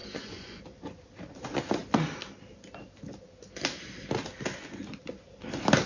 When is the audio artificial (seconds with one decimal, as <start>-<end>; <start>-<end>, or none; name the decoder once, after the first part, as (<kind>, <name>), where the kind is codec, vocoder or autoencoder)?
0.0-0.6 (vocoder, Vocos)